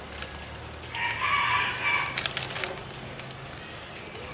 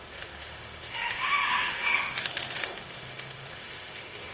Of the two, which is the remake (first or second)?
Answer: second